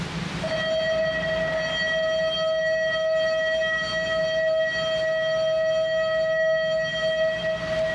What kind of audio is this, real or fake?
real